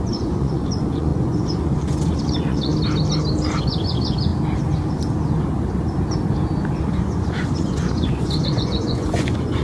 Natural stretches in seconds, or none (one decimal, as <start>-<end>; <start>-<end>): 2.7-3.6; 4.3-6.8